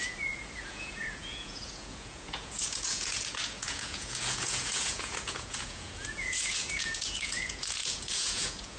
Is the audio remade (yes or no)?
yes